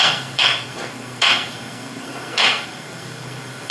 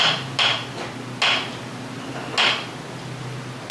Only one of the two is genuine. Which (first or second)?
second